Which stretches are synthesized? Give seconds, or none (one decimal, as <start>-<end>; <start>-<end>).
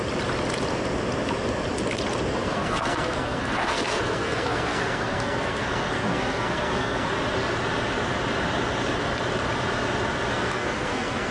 2.3-7.1; 10.3-11.3